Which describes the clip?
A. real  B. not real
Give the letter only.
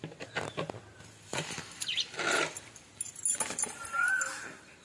A